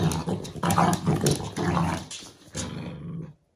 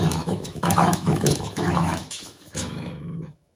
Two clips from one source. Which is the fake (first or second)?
second